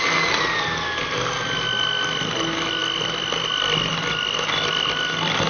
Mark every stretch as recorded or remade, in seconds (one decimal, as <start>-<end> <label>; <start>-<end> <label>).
0.0-5.5 recorded